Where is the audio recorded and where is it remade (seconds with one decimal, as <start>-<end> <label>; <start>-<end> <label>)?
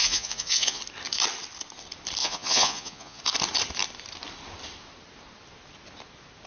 0.0-0.8 remade; 0.8-2.2 recorded; 2.2-3.2 remade; 3.2-6.5 recorded